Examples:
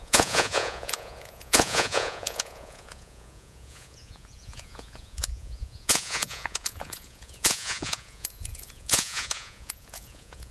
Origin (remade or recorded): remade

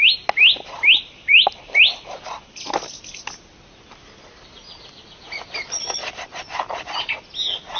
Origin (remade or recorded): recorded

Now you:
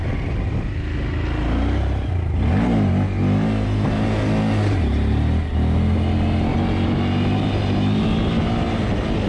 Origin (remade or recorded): recorded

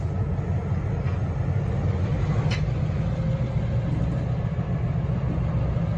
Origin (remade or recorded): recorded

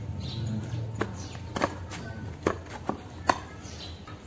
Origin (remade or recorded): recorded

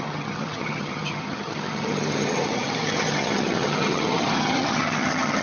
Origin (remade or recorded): remade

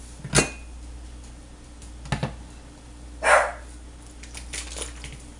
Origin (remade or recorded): recorded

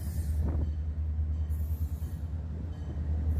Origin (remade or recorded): recorded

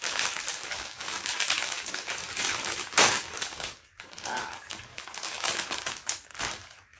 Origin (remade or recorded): remade